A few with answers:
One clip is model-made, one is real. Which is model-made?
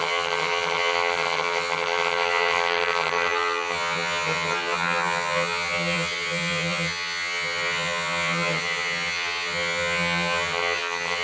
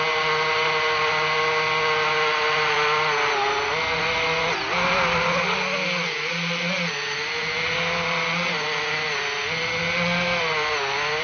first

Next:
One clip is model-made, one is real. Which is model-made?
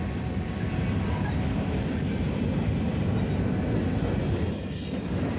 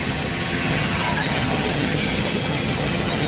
second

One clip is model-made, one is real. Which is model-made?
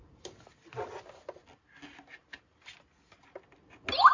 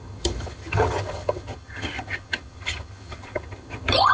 second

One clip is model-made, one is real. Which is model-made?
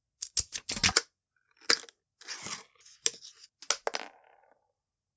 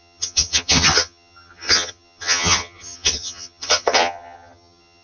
second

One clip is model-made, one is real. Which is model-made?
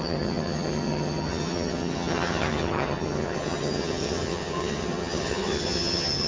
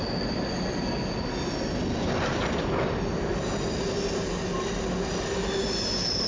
first